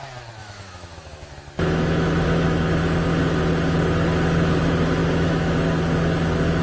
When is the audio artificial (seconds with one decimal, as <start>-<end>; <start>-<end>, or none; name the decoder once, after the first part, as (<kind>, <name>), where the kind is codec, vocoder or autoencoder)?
0.4-2.8 (autoencoder, DAC-VAE); 5.0-5.5